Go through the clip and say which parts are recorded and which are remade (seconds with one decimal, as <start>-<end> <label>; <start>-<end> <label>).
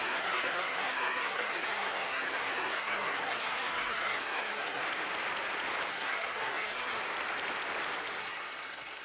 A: 0.0-4.8 remade; 4.8-5.9 recorded; 5.9-7.0 remade; 7.0-8.2 recorded; 8.2-9.0 remade